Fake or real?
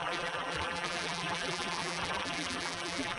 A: fake